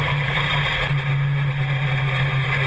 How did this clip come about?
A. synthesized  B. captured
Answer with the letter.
B